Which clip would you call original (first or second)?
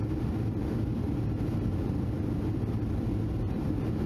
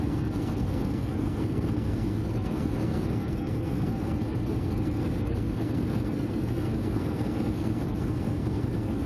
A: first